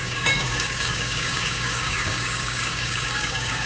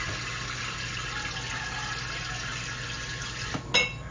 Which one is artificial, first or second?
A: first